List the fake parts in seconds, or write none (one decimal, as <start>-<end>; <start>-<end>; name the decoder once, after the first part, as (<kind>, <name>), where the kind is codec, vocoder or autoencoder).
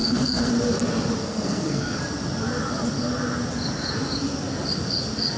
0.0-0.5 (codec, SNAC); 1.2-2.0